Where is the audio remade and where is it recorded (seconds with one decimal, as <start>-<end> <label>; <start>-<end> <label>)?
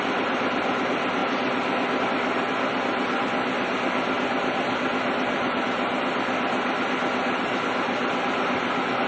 0.0-9.1 recorded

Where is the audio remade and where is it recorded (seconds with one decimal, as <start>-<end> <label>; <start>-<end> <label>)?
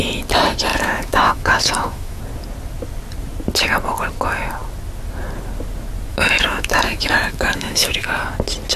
0.0-0.7 recorded; 0.7-2.2 remade; 2.2-6.1 recorded; 6.1-8.1 remade; 8.1-8.8 recorded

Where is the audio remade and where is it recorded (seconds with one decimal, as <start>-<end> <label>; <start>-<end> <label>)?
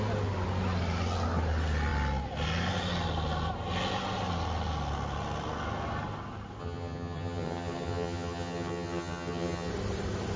0.0-6.6 recorded; 6.6-9.7 remade; 9.7-10.4 recorded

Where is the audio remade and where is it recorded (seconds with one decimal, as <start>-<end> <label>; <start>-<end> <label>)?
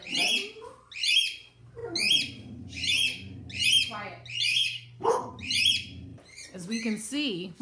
0.0-4.5 recorded; 4.5-5.3 remade; 5.3-7.6 recorded